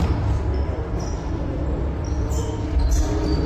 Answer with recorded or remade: recorded